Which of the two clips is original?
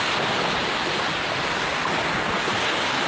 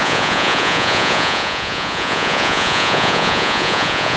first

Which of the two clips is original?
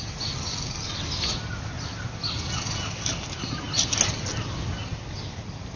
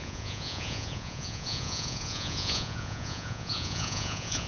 first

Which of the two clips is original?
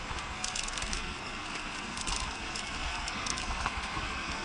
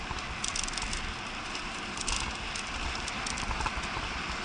second